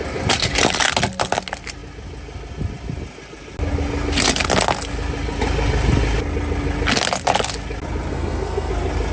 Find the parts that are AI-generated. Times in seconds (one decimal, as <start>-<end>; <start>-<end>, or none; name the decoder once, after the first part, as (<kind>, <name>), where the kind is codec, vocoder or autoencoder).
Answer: 8.1-8.7 (codec, SNAC)